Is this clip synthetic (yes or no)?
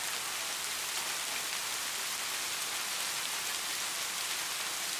no